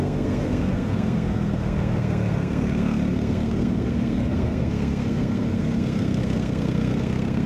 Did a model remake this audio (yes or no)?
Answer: yes